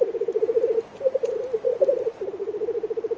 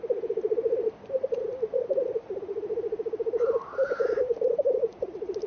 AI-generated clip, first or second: second